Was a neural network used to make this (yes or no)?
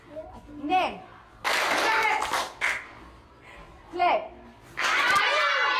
no